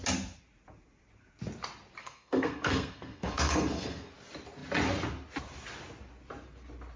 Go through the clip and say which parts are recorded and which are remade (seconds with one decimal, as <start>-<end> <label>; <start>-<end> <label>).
0.0-2.0 recorded; 2.0-4.1 remade; 4.1-7.0 recorded